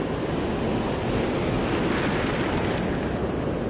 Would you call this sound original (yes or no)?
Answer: yes